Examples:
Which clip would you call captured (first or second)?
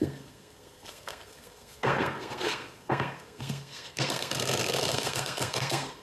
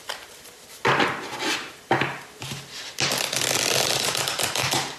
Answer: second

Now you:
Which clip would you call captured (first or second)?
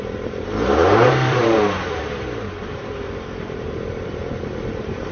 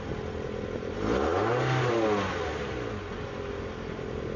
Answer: second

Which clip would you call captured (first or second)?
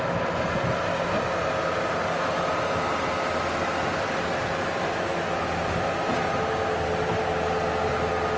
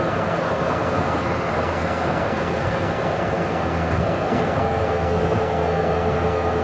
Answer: first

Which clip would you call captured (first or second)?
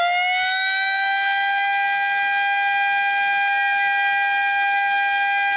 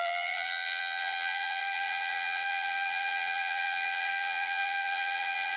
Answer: first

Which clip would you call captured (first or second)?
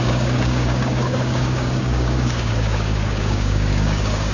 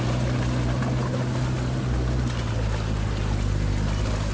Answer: second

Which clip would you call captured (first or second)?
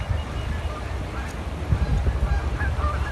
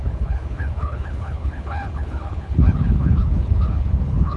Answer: first